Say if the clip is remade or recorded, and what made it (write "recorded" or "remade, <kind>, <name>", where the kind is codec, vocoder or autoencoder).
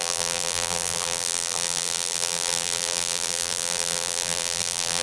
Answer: remade, vocoder, BigVGAN v2